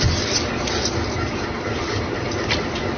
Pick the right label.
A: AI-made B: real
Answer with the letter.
B